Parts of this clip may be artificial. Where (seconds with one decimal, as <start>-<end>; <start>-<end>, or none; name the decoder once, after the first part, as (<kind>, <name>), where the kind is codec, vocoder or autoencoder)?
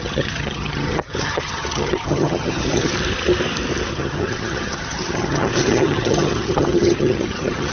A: 0.0-2.9 (vocoder, HiFi-GAN); 3.9-7.7